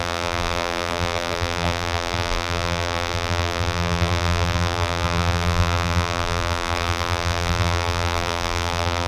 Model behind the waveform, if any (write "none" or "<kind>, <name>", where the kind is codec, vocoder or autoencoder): vocoder, BigVGAN v2